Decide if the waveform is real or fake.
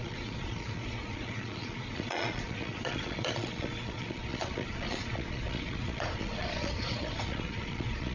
fake